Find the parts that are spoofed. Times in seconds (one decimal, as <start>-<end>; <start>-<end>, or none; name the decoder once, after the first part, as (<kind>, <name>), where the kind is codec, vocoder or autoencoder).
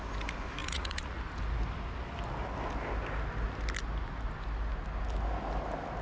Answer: 0.6-1.2 (vocoder, Vocos)